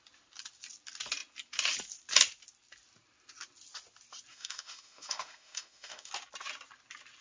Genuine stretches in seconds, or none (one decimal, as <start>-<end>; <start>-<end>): 0.0-4.3; 6.1-7.2